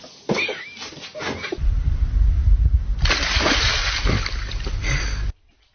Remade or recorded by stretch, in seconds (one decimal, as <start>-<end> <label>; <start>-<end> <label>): 0.0-5.7 recorded

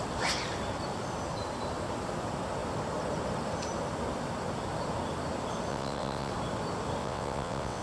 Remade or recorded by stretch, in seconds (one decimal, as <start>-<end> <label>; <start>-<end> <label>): 0.0-5.7 recorded; 5.7-6.3 remade; 6.3-7.0 recorded; 7.0-7.8 remade

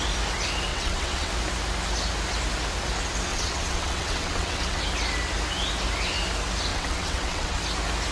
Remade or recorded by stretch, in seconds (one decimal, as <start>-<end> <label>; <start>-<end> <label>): 0.0-0.7 recorded; 0.7-1.3 remade; 1.3-3.3 recorded; 3.3-4.8 remade; 4.8-6.7 recorded; 6.7-7.6 remade; 7.6-8.1 recorded

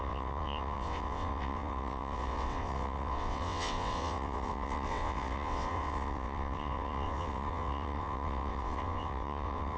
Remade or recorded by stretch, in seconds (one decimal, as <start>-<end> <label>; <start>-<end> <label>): 0.0-9.8 remade

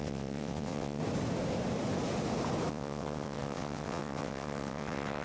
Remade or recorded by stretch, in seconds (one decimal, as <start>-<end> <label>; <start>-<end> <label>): 0.0-1.0 remade; 1.0-2.7 recorded; 2.7-5.2 remade

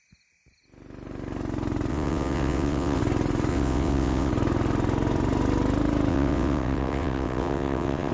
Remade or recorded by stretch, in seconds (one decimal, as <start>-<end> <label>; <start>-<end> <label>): 0.0-1.9 recorded; 1.9-3.0 remade; 3.0-3.5 recorded; 3.5-4.3 remade; 4.3-6.1 recorded; 6.1-8.1 remade

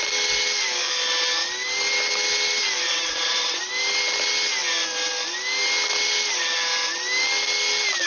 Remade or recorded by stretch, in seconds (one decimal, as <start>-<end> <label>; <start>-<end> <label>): 0.0-2.9 recorded; 2.9-3.6 remade; 3.6-8.1 recorded

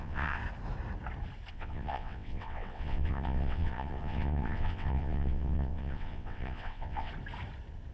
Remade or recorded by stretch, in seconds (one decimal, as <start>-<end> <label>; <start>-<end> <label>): 0.0-0.4 remade; 0.4-1.5 recorded; 1.5-7.1 remade; 7.1-7.9 recorded